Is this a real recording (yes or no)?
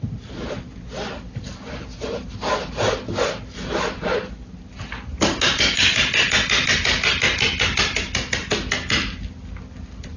yes